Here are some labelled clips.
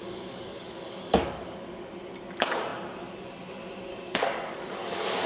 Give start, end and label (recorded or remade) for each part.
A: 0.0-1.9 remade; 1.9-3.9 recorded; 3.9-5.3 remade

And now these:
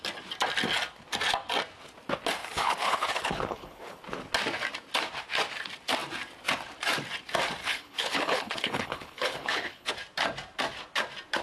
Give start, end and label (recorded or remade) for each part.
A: 0.0-2.4 recorded; 2.4-4.0 remade; 4.0-7.6 recorded; 7.6-9.9 remade; 9.9-11.4 recorded

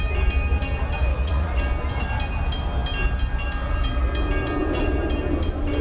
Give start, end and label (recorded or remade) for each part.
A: 0.0-1.1 recorded; 1.1-1.6 remade; 1.6-5.8 recorded